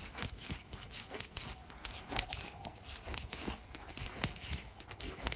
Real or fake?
fake